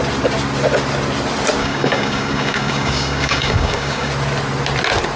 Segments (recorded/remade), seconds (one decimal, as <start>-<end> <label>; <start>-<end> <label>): 0.0-1.6 recorded; 1.6-4.1 remade; 4.1-5.2 recorded